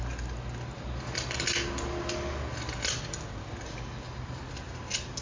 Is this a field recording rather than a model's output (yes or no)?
yes